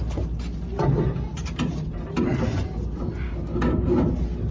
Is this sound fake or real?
real